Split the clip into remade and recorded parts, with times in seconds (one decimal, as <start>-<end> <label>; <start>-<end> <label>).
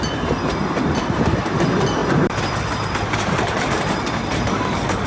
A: 0.0-2.0 recorded; 2.0-5.1 remade